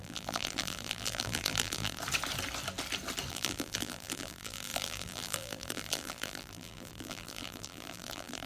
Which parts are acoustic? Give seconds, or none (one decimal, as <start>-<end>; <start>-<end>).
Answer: 2.0-3.3